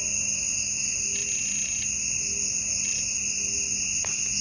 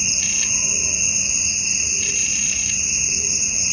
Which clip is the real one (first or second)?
first